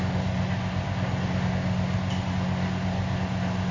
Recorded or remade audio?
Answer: recorded